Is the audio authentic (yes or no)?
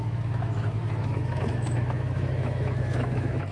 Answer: no